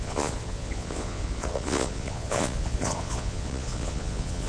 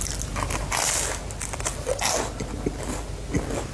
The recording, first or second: second